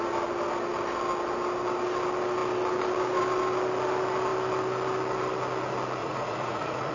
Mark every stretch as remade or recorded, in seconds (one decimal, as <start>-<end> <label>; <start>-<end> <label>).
0.0-6.0 recorded; 6.0-6.9 remade